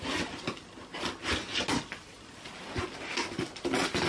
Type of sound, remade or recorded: recorded